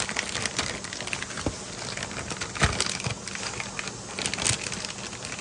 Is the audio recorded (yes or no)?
yes